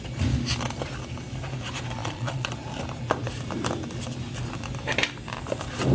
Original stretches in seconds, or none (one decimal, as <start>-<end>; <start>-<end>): 0.0-2.0; 2.5-5.9